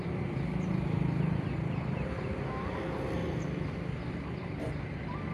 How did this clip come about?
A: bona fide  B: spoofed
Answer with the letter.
A